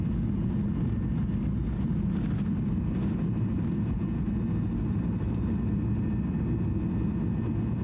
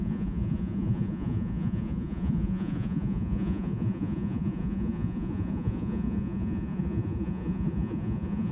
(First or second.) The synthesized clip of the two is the second